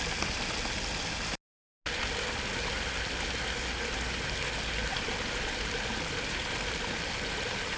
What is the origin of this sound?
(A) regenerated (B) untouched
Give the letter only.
B